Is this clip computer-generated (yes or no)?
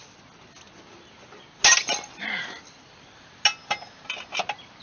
no